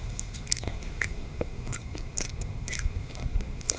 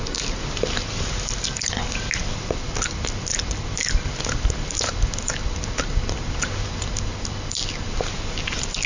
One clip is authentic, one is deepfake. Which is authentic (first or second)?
second